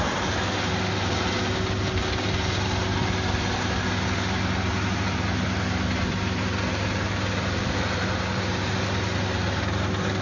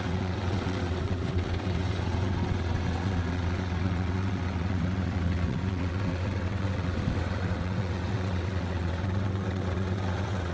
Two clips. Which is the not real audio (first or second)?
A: second